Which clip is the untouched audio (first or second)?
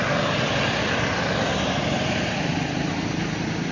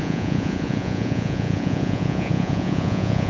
first